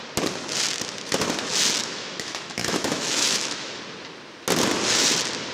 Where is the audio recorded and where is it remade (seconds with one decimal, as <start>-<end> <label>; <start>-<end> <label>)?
0.0-1.8 recorded; 1.8-3.8 remade; 3.8-5.5 recorded